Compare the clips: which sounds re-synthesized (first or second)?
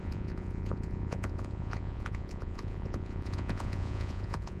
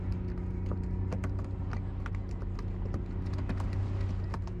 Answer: first